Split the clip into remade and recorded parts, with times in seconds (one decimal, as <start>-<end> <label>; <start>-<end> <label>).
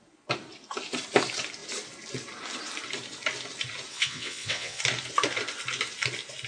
0.0-3.9 recorded; 3.9-4.8 remade; 4.8-6.5 recorded